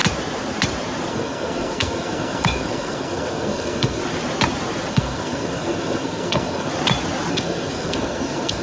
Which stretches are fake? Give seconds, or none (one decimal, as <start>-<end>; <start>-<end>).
1.1-4.0; 4.9-6.7; 7.3-8.6